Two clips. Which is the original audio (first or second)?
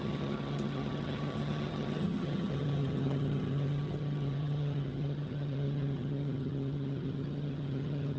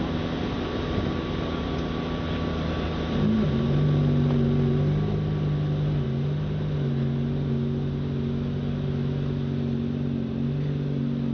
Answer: second